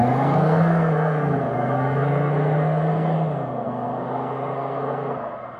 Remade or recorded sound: remade